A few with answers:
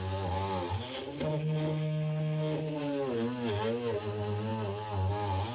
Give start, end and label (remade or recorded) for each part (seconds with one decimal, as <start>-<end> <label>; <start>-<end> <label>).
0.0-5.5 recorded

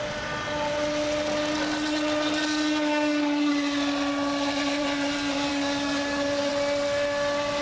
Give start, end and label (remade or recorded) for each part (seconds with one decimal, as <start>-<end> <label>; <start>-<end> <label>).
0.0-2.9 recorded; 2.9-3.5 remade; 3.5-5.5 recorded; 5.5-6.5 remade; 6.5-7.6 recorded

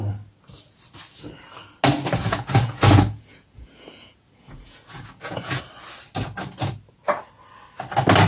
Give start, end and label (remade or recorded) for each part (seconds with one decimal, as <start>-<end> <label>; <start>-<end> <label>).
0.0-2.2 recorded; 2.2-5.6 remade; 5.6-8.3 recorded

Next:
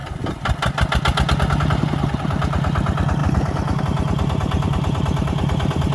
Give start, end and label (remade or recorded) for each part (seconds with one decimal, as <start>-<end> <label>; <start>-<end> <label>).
0.0-3.2 recorded; 3.2-3.8 remade; 3.8-5.9 recorded